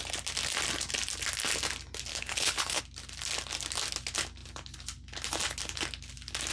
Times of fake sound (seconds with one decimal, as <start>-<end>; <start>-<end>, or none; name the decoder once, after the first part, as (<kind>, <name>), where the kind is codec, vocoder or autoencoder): 2.1-2.8 (codec, HILCodec)